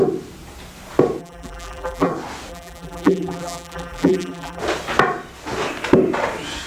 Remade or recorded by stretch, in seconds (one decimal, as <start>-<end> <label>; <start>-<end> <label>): 0.0-1.2 recorded; 1.2-2.1 remade; 2.1-2.5 recorded; 2.5-4.6 remade; 4.6-6.7 recorded